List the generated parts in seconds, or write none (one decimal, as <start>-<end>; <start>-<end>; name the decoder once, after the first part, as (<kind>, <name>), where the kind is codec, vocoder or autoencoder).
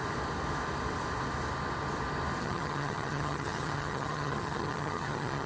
2.4-5.5 (vocoder, HiFi-GAN)